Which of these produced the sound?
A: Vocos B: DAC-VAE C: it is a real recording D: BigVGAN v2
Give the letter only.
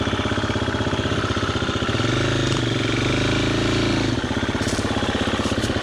C